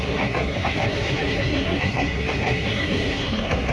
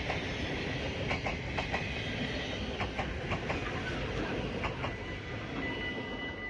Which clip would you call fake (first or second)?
first